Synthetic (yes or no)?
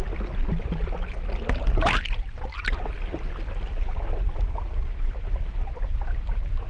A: no